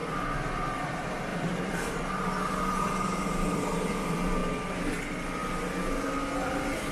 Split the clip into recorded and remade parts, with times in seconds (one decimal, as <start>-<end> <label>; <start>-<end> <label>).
0.0-4.4 remade; 4.4-6.4 recorded; 6.4-6.9 remade